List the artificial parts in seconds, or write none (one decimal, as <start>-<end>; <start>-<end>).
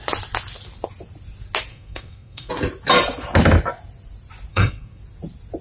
1.7-2.5; 4.5-5.0